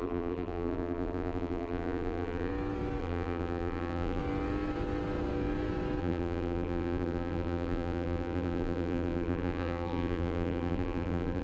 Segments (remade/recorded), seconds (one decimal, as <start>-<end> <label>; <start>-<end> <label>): 0.0-2.5 remade; 2.5-3.0 recorded; 3.0-4.2 remade; 4.2-6.0 recorded; 6.0-11.4 remade